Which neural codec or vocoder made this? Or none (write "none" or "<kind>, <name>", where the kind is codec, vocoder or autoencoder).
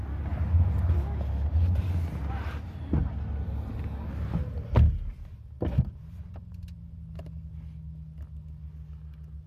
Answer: none